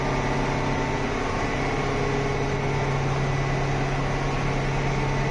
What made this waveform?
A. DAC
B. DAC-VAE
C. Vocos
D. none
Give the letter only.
D